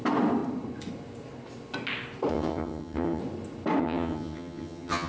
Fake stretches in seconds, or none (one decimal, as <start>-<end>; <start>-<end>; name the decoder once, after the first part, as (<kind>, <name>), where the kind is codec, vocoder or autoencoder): 2.3-3.2 (vocoder, HiFi-GAN); 3.8-5.1